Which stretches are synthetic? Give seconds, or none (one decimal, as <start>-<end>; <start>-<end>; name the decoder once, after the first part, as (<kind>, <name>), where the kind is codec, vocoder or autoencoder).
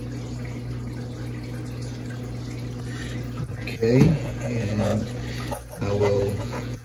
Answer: 3.6-4.9 (vocoder, Vocos); 6.0-6.8